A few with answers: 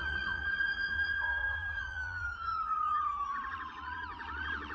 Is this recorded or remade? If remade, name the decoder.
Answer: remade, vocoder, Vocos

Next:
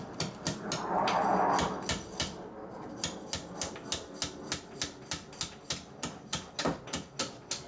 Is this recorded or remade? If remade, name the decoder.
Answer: recorded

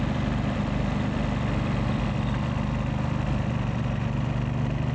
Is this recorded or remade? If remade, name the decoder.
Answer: recorded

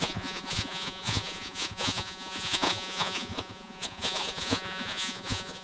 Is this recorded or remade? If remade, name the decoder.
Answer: remade, vocoder, Vocos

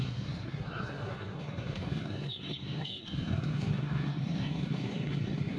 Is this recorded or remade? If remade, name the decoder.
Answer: remade, codec, SNAC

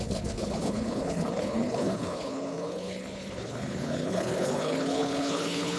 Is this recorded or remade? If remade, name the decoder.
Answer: remade, codec, HILCodec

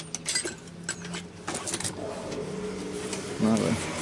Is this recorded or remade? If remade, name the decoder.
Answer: recorded